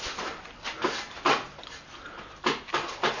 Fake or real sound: real